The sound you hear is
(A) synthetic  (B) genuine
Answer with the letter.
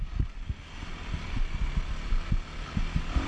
A